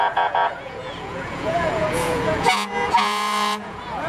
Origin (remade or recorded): remade